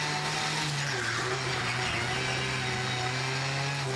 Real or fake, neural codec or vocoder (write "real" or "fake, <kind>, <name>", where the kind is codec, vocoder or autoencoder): real